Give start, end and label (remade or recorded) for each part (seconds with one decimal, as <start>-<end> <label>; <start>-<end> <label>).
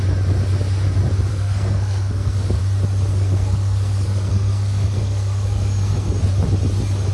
0.0-1.3 recorded; 1.3-2.6 remade; 2.6-3.1 recorded; 3.1-6.1 remade; 6.1-7.1 recorded